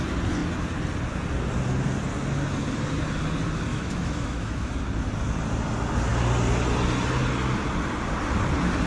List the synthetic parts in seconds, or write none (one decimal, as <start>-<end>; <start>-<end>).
3.7-4.7